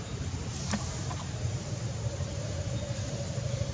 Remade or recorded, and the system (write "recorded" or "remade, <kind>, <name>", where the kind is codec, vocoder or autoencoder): remade, vocoder, BigVGAN v2